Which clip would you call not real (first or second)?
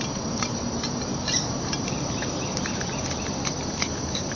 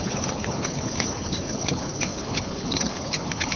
second